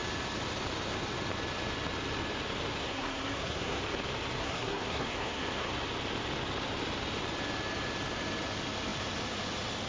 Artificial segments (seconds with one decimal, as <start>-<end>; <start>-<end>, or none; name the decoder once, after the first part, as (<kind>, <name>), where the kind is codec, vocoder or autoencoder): 2.8-3.8 (codec, SNAC); 4.4-5.7